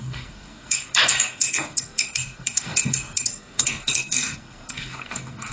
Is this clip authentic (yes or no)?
no